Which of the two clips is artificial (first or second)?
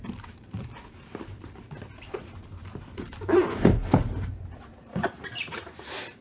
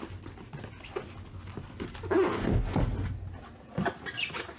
first